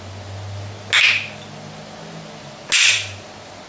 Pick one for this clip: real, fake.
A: real